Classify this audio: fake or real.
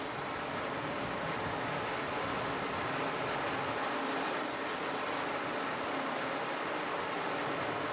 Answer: real